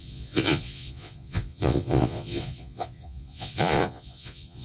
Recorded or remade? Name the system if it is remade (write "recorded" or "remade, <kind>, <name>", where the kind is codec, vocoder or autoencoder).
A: remade, vocoder, Vocos